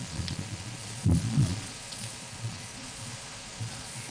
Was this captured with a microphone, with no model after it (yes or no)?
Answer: no